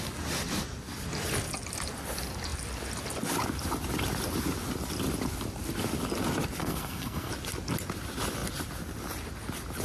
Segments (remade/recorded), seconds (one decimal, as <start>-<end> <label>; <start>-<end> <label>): 0.0-6.6 recorded; 6.6-7.3 remade; 7.3-9.8 recorded